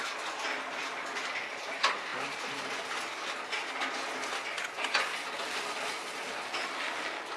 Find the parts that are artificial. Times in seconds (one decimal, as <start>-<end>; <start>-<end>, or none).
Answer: none